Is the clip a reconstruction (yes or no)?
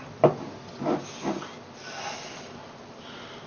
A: no